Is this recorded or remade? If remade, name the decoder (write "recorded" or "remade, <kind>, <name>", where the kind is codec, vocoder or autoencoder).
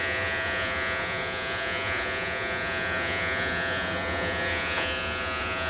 remade, vocoder, Vocos